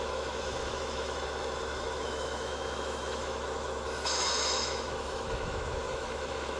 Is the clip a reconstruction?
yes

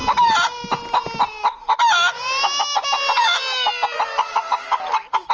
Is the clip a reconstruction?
no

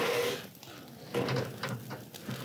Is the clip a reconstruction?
no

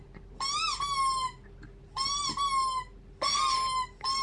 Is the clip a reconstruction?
no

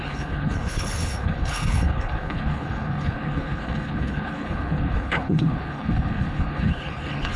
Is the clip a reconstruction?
yes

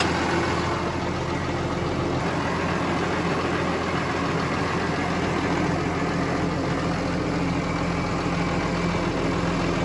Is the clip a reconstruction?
no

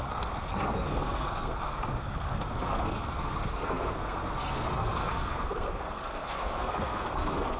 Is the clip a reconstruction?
yes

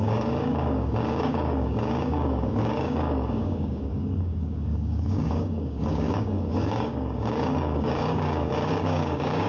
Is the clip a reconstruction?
yes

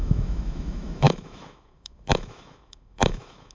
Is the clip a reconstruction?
yes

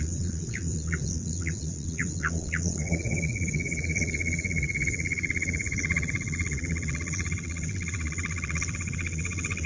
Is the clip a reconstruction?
yes